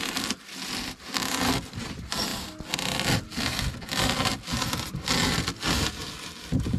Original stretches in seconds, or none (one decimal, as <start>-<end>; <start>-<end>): 0.0-6.8